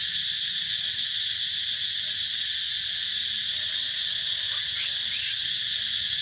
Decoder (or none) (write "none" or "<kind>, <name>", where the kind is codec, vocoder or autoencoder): none